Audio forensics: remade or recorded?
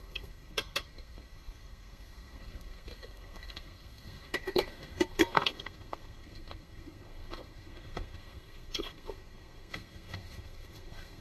remade